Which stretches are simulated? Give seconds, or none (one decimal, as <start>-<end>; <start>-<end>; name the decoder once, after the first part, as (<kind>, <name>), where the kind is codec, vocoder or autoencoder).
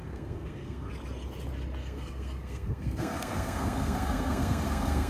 0.0-0.9 (codec, SNAC); 1.8-5.1